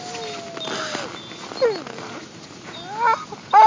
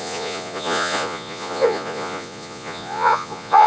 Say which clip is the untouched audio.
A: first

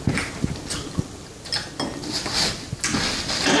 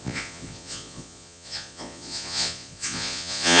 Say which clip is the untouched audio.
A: first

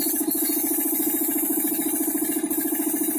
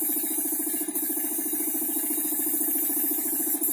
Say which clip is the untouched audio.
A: first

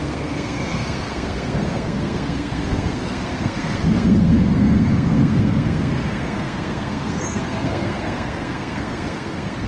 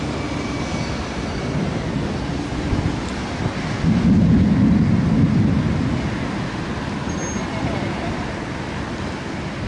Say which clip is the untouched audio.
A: second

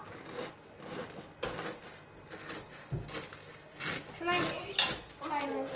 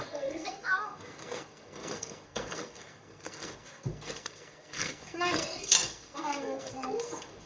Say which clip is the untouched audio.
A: first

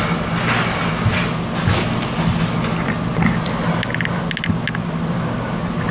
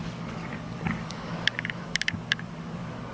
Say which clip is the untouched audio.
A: first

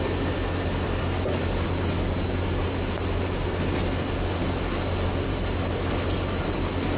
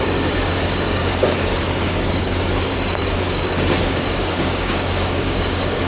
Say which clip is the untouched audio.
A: first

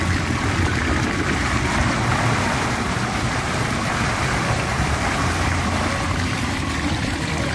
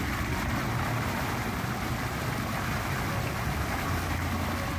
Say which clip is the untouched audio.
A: second